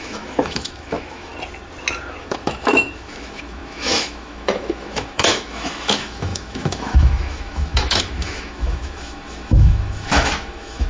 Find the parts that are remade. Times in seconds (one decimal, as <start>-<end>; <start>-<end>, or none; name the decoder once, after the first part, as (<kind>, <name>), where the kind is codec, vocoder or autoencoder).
0.0-1.3 (autoencoder, DAC-VAE); 2.2-10.9